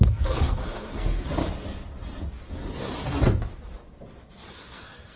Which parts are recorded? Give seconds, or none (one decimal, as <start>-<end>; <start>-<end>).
1.4-4.5